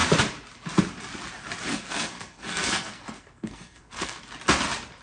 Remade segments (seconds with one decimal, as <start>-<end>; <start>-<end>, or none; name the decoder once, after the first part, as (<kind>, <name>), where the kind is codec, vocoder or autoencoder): 1.7-4.2 (codec, SNAC)